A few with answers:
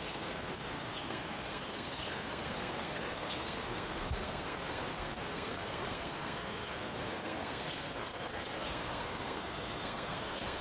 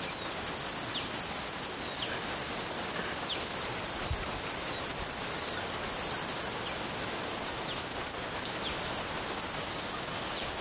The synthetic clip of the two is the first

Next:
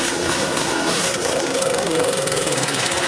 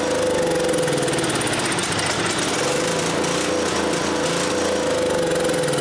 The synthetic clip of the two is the first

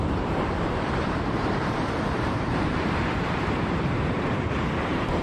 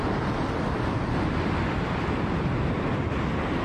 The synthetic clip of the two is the first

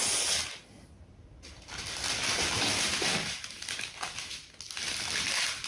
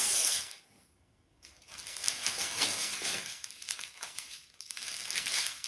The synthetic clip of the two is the second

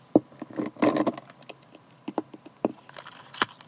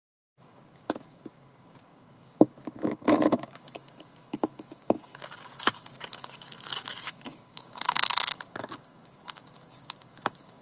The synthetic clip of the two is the second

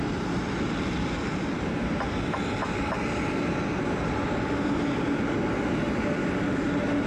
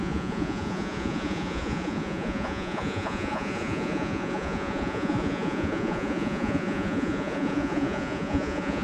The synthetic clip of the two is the second